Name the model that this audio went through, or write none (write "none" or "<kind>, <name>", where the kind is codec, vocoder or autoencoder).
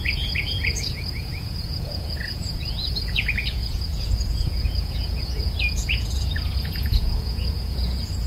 vocoder, Vocos